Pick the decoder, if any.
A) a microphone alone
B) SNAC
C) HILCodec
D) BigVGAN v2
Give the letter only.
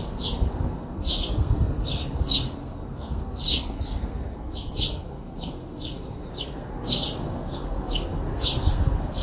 B